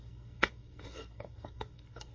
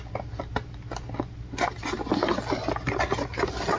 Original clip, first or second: second